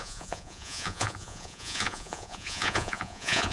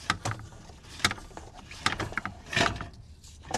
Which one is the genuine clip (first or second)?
second